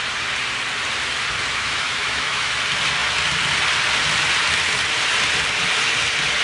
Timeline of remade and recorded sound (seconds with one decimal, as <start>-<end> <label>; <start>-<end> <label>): 0.0-1.5 recorded; 1.5-2.5 remade; 2.5-6.4 recorded